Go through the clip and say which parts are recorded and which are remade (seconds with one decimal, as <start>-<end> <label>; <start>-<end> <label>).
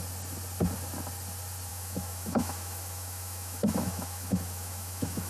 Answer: 0.0-1.7 recorded; 1.7-5.3 remade